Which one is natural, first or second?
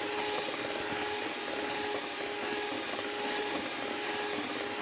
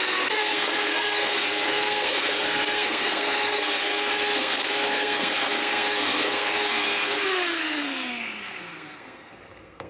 first